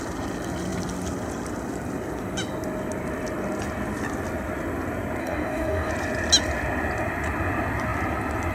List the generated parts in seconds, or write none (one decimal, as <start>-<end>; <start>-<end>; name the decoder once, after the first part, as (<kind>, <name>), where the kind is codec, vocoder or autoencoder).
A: 5.2-5.9 (codec, DAC)